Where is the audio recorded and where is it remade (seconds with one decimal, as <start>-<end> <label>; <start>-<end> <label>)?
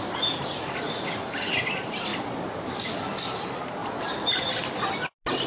0.0-3.8 recorded; 3.8-4.7 remade; 4.7-5.5 recorded